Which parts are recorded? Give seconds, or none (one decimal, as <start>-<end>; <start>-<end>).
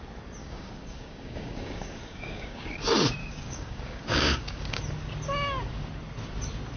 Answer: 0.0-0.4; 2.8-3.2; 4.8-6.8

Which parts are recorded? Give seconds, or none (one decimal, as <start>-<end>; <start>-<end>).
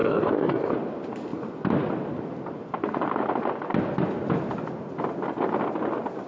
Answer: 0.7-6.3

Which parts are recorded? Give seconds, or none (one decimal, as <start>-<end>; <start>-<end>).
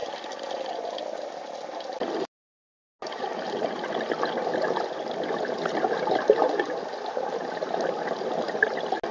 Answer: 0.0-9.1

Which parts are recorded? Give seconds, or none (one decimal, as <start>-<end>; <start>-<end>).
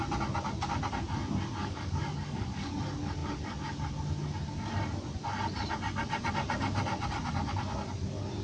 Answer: 0.0-1.6; 2.7-8.4